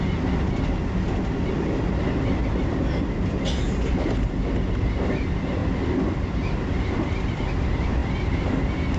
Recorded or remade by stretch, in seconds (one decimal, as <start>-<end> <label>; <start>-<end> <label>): 0.0-2.4 recorded; 2.4-4.6 remade; 4.6-5.6 recorded; 5.6-7.4 remade; 7.4-8.0 recorded; 8.0-8.6 remade; 8.6-9.0 recorded